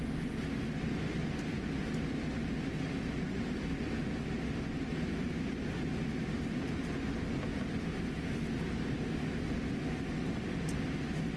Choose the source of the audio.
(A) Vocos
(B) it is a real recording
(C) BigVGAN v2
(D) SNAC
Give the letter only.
B